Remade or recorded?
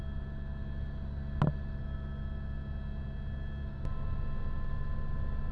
recorded